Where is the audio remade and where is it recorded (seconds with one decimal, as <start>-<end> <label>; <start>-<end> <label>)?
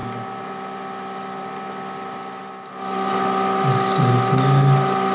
0.0-5.1 recorded